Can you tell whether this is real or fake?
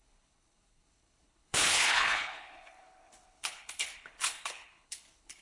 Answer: fake